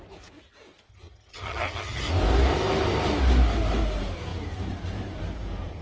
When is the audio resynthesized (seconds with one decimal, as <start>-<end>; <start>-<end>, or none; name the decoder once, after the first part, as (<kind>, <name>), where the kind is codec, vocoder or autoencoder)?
0.9-2.0 (vocoder, HiFi-GAN)